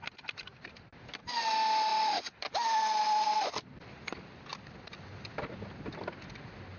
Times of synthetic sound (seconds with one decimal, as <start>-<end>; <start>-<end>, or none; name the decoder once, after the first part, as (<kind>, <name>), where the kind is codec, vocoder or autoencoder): 1.9-3.9 (vocoder, BigVGAN v2)